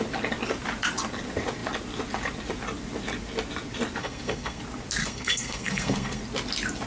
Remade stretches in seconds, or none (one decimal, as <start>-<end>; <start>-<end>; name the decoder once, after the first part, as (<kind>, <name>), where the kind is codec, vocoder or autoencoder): 4.0-4.6 (codec, SNAC); 5.0-6.2